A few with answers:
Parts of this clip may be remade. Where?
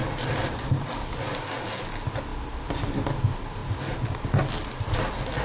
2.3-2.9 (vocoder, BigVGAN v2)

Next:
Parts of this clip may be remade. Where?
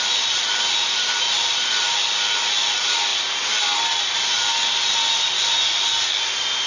none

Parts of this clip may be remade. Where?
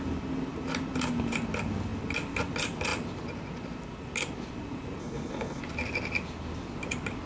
5.0-5.6 (codec, HILCodec)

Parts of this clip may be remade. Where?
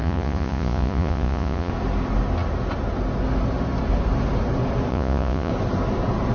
0.0-1.7 (vocoder, Vocos); 4.9-5.5